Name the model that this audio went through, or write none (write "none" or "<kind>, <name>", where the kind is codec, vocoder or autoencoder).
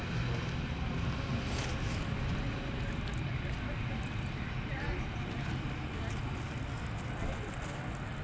none